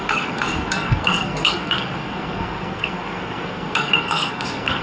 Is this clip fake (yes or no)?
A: yes